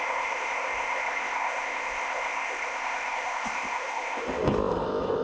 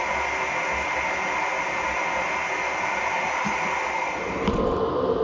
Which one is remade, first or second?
first